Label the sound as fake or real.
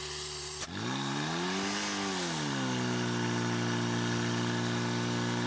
real